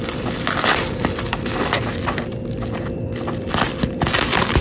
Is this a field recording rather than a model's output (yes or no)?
yes